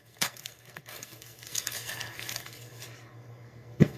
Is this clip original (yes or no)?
no